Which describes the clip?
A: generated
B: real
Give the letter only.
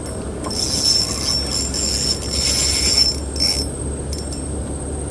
B